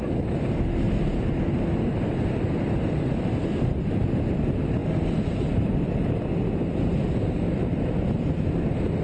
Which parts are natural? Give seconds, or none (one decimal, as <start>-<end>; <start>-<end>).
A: 0.0-4.8; 6.4-9.0